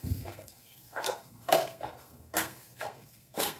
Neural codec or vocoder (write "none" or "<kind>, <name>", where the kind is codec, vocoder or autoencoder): codec, SNAC